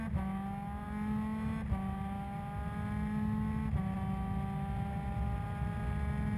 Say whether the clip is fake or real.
real